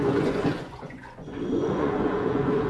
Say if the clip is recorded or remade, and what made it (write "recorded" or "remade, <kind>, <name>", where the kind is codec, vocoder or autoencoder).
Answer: remade, vocoder, Vocos